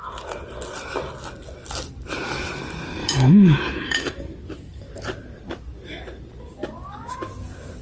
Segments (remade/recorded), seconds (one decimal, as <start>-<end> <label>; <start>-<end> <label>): 0.0-3.0 recorded; 3.0-4.2 remade; 4.2-7.8 recorded